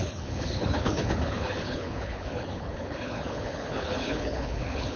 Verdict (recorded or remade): remade